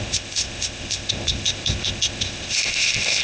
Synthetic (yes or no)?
yes